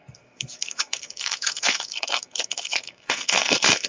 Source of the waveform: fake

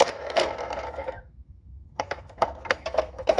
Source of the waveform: fake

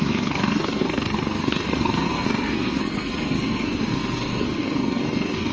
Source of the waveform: fake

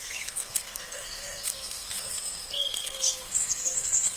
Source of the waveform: fake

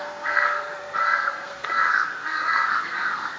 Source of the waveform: fake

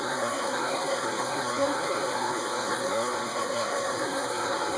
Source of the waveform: fake